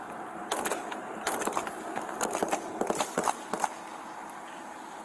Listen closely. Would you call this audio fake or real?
real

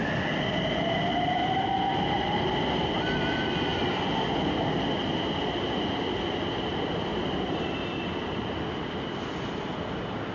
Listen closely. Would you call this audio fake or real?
real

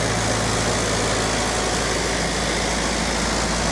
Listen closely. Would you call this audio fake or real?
real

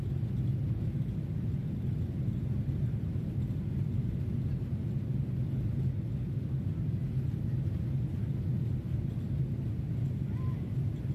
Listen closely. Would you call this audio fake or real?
real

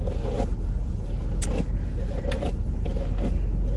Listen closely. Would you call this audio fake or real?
real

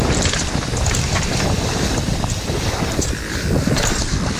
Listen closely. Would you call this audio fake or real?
real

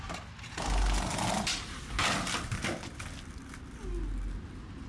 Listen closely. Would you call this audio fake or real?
real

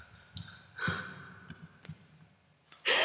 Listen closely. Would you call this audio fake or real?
real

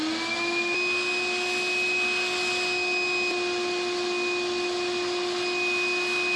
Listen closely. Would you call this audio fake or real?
real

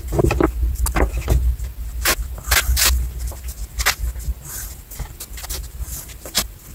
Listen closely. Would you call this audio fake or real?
real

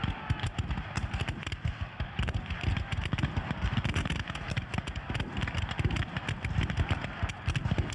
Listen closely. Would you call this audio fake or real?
real